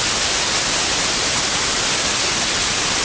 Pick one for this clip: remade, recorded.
recorded